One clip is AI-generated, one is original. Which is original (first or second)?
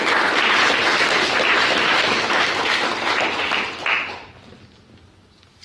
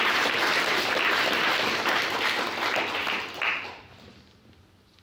first